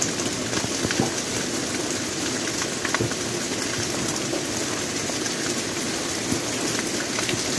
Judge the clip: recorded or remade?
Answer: recorded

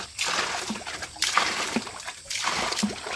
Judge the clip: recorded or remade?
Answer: recorded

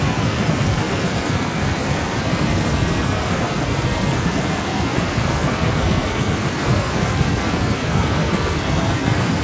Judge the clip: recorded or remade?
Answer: remade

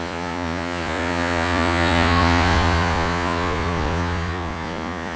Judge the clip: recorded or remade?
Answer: remade